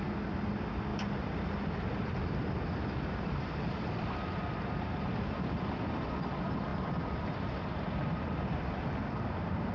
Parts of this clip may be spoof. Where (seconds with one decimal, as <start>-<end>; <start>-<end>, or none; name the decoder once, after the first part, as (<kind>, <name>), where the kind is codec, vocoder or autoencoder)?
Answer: 0.9-5.4 (vocoder, BigVGAN v2)